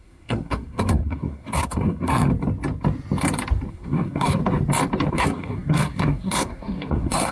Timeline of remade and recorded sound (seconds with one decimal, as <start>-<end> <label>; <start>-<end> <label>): 0.0-2.3 remade; 2.3-3.7 recorded; 3.7-4.4 remade; 4.4-5.1 recorded; 5.1-7.3 remade